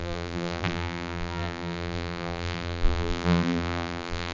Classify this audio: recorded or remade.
remade